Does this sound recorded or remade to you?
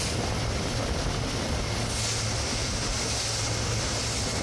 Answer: recorded